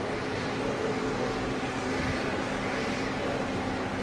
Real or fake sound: real